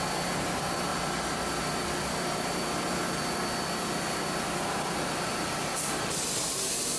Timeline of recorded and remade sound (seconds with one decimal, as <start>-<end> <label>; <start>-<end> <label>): 0.0-7.0 recorded